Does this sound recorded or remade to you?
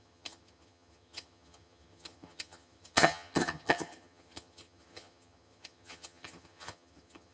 remade